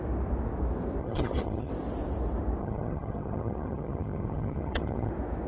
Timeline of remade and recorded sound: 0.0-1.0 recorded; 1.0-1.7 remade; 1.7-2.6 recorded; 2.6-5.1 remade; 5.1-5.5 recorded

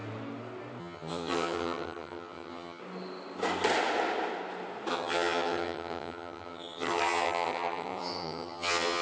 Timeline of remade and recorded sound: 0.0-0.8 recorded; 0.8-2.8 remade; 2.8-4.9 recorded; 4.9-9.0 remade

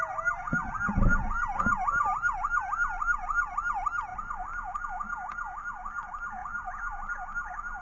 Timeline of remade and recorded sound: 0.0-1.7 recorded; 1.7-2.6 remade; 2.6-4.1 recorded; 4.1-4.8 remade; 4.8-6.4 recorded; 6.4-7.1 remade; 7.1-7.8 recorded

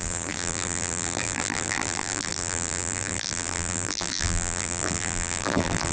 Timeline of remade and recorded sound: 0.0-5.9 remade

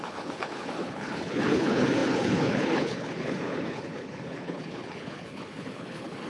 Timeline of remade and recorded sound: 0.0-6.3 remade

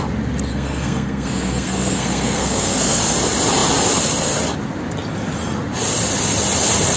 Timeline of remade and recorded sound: 0.0-0.5 recorded; 0.5-3.0 remade; 3.0-7.0 recorded

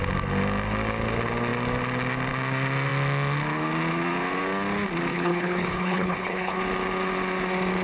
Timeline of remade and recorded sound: 0.0-5.1 recorded; 5.1-6.6 remade; 6.6-7.8 recorded